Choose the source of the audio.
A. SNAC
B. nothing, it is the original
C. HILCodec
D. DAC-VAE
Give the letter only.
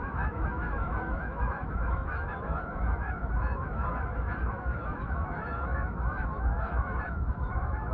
D